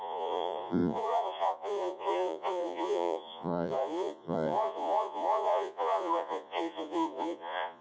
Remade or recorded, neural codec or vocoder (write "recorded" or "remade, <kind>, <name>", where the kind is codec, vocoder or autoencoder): remade, vocoder, Vocos